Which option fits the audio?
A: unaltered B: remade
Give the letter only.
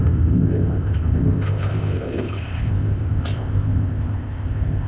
B